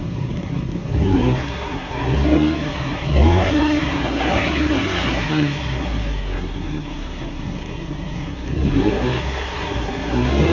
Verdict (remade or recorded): remade